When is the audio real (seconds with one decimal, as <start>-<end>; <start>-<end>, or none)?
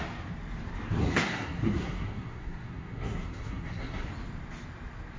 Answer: 0.0-1.0; 4.1-5.2